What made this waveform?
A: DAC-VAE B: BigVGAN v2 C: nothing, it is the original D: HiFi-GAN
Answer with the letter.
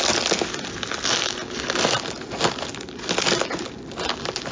C